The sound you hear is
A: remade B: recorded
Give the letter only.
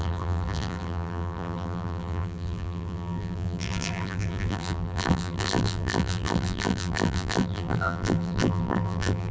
A